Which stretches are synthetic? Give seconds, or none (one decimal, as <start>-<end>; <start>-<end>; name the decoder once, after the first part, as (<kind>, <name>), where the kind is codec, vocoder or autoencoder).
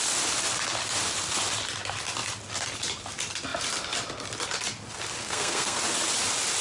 5.2-5.8 (codec, SNAC)